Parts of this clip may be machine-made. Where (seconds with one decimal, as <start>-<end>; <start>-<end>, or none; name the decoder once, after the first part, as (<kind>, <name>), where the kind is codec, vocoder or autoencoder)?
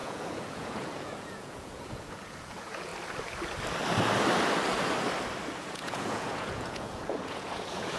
0.0-2.9 (vocoder, Vocos); 5.6-8.0